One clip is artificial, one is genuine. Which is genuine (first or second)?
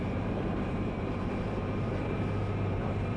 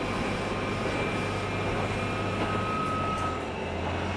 second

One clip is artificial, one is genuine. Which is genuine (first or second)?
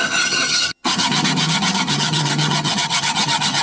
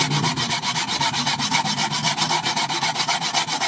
second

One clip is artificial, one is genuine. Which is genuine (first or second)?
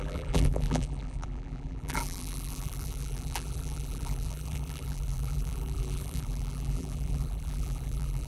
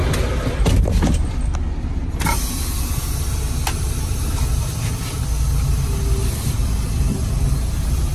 second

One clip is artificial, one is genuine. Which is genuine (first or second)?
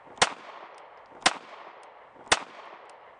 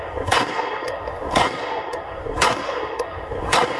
first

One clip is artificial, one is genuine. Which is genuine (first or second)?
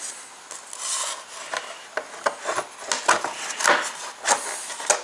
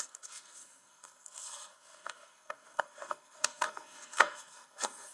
first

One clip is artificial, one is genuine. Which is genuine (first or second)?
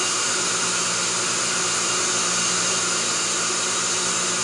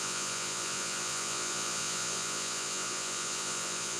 first